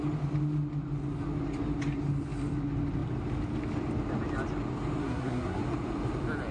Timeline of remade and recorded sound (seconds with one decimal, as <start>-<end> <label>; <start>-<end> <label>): 0.0-5.0 recorded; 5.0-5.6 remade; 5.6-6.5 recorded